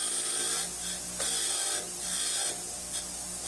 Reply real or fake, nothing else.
real